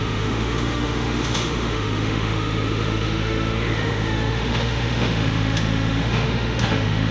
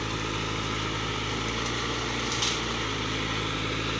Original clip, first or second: second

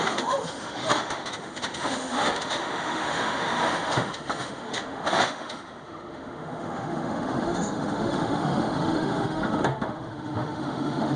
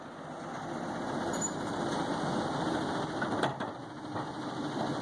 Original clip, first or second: second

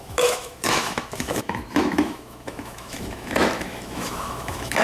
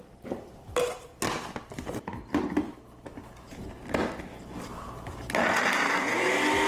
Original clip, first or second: second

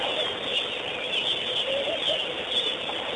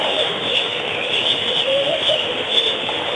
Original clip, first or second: first